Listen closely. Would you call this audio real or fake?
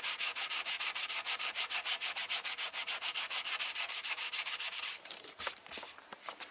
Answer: fake